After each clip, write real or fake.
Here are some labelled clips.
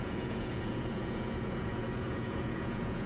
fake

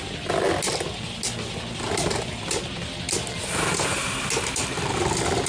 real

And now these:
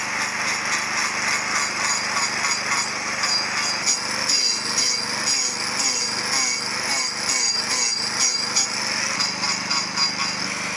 real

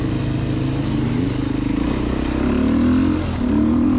real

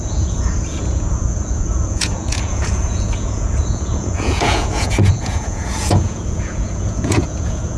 fake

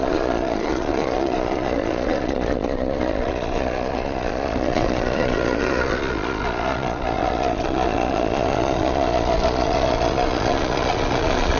fake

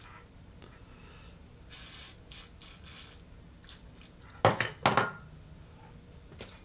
real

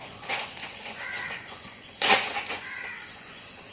fake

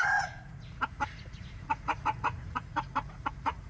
fake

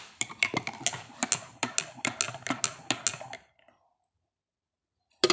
real